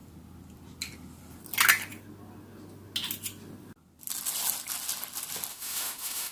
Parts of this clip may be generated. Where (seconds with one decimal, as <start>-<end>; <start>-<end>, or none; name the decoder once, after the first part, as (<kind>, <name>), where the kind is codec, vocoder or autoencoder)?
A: 5.5-6.3 (autoencoder, DAC-VAE)